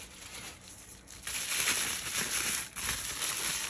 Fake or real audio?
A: real